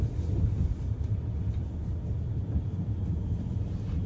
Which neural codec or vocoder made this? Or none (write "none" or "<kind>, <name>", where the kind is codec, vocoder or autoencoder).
none